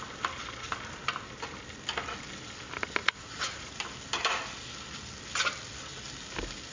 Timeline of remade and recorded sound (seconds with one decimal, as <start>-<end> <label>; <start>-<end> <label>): 0.0-3.0 recorded; 3.0-3.7 remade; 3.7-6.7 recorded